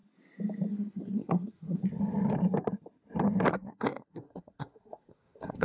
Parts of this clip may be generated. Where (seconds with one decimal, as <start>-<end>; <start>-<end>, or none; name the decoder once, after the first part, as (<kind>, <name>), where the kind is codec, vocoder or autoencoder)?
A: 0.7-1.8 (codec, SNAC); 3.5-5.6

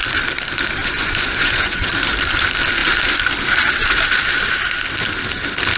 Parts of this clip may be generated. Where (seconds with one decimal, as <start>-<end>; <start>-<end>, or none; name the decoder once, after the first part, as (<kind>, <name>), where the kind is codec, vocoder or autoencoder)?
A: 0.8-1.9 (vocoder, Vocos)